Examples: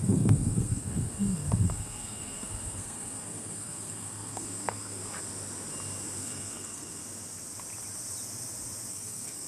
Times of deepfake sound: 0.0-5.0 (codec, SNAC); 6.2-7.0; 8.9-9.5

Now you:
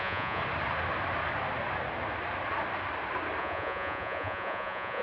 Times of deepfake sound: 0.0-0.4 (vocoder, Vocos); 3.4-5.0

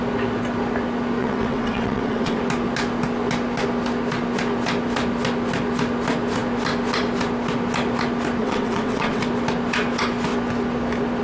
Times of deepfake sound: 1.2-2.4 (vocoder, WaveNeXt); 8.4-9.2